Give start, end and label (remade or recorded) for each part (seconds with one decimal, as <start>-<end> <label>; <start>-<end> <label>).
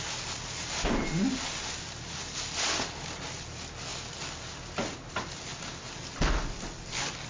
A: 0.0-7.3 recorded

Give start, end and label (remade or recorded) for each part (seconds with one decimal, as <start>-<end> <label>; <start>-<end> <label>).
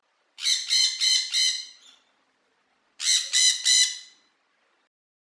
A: 0.0-0.4 remade; 0.4-1.0 recorded; 1.0-5.3 remade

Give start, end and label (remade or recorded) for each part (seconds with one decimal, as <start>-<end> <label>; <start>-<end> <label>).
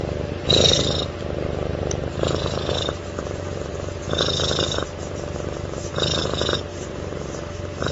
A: 0.0-7.9 recorded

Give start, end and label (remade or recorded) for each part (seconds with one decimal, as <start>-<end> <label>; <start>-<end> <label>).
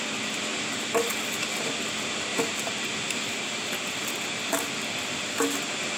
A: 0.0-6.0 recorded